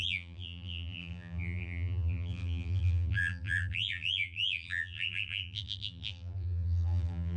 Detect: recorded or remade remade